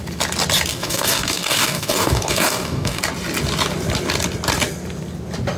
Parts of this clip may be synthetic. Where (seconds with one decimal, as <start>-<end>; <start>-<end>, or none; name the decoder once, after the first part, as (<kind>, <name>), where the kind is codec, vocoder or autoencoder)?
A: 0.7-3.0 (codec, DAC)